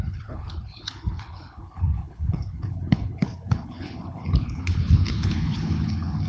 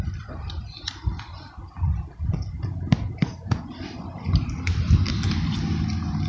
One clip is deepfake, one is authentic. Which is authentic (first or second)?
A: second